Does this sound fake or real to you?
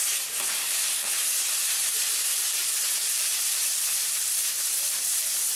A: fake